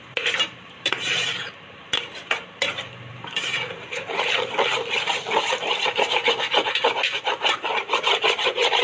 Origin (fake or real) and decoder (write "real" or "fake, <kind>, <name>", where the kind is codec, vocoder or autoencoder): fake, vocoder, BigVGAN v2